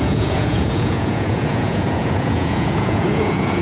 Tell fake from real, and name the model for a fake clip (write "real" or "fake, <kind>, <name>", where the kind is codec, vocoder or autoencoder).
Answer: fake, vocoder, Vocos